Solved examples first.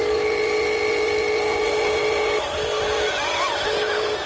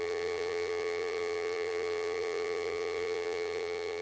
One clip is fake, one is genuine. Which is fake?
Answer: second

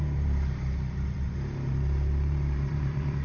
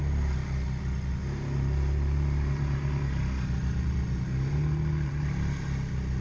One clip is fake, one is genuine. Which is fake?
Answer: first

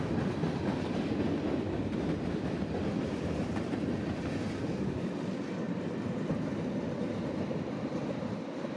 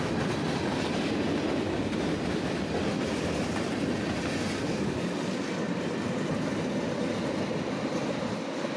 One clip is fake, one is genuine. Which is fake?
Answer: first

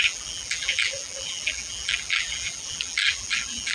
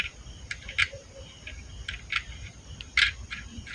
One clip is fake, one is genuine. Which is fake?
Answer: first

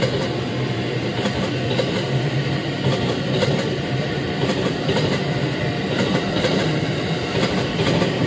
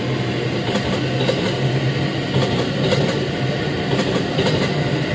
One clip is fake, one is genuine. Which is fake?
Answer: first